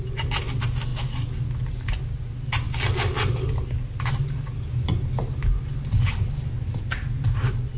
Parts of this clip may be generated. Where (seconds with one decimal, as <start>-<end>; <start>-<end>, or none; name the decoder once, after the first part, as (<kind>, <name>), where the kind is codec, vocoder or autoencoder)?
none